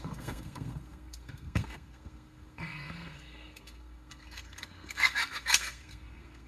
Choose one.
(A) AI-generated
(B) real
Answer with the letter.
A